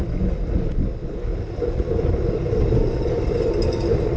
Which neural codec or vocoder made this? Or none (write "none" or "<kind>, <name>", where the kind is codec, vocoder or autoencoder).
none